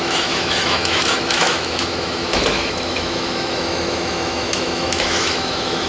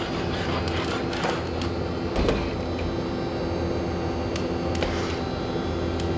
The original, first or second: second